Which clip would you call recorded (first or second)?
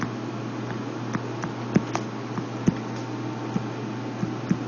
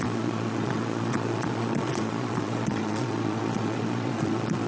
first